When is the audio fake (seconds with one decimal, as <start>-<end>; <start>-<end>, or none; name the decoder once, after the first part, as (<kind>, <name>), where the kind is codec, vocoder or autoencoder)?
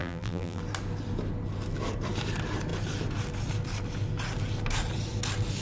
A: 0.0-0.6 (vocoder, BigVGAN v2)